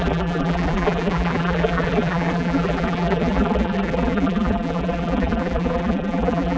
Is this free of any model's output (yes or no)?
no